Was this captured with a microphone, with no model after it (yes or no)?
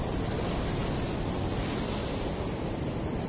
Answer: yes